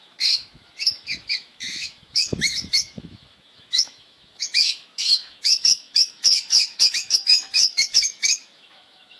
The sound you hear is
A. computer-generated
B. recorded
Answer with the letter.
A